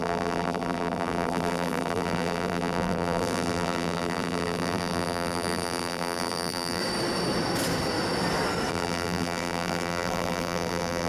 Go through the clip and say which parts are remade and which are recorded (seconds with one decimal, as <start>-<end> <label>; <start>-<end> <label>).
0.0-6.8 remade; 6.8-8.7 recorded; 8.7-11.1 remade